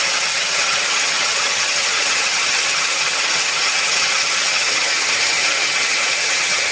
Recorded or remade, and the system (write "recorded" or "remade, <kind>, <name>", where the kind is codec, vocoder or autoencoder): remade, vocoder, HiFi-GAN